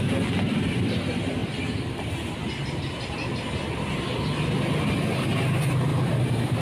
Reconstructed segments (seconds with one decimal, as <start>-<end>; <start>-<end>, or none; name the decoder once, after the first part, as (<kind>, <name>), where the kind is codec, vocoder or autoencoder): 5.9-6.6 (vocoder, BigVGAN v2)